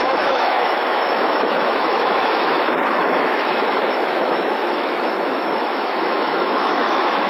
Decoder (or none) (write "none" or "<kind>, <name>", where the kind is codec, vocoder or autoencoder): autoencoder, DAC-VAE